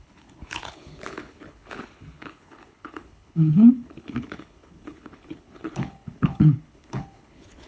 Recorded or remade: remade